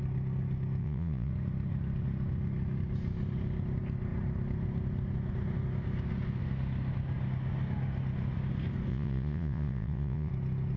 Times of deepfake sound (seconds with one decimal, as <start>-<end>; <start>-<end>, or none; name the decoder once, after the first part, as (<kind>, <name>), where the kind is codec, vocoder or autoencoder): 0.8-1.3 (vocoder, Vocos); 8.9-10.3